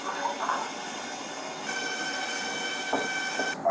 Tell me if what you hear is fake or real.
real